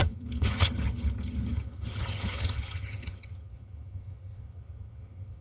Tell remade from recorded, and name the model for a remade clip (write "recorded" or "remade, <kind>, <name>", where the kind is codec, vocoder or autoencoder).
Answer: remade, vocoder, HiFi-GAN